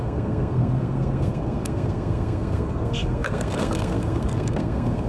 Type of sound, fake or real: fake